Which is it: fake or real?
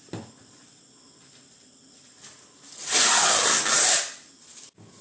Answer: real